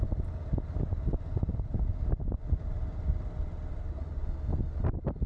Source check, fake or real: real